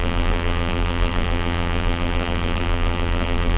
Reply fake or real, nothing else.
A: fake